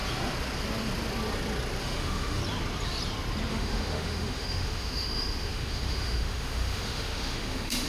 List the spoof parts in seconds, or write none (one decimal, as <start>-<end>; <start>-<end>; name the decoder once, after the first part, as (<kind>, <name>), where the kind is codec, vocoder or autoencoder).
1.8-2.4 (autoencoder, DAC-VAE); 3.5-7.9